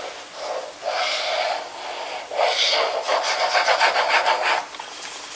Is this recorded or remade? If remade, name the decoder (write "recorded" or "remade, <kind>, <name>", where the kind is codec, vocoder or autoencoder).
recorded